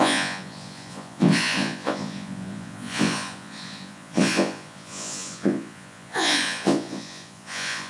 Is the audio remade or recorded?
remade